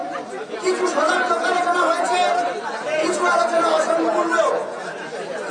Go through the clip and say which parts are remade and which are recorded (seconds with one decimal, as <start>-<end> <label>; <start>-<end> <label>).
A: 0.0-5.5 recorded